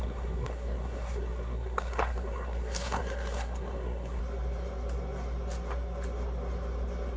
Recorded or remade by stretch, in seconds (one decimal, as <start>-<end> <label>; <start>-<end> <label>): 0.0-4.2 remade; 4.2-7.2 recorded